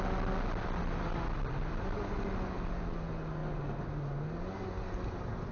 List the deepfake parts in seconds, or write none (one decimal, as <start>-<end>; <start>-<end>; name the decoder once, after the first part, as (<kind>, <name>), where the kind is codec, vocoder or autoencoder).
none